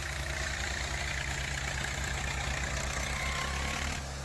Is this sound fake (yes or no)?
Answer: no